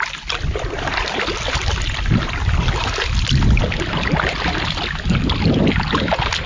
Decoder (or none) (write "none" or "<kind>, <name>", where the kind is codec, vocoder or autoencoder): none